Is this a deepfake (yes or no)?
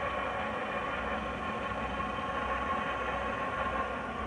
no